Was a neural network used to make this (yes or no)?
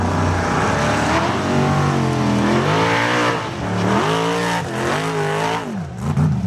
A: no